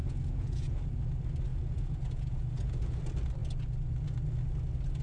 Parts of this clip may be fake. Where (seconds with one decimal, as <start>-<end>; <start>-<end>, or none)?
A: 0.0-0.9; 1.5-3.0